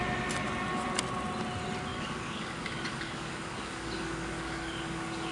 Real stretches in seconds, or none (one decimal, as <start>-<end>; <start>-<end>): 0.0-1.9